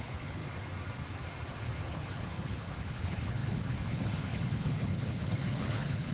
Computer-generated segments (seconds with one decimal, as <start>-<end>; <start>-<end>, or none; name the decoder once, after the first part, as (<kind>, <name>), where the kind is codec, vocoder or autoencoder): 0.0-0.4 (codec, HILCodec); 1.9-6.1